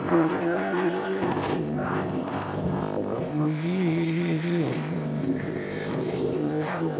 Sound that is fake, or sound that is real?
fake